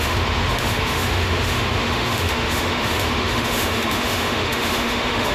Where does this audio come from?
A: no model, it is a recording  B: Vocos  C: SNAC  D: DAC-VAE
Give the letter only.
D